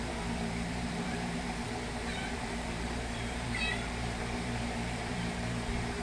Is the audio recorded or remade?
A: remade